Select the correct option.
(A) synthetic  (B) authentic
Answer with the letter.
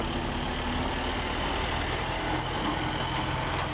B